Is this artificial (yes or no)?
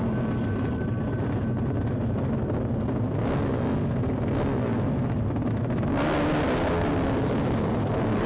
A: no